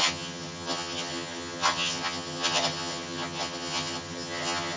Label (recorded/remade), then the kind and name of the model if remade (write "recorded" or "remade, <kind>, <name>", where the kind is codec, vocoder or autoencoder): remade, vocoder, HiFi-GAN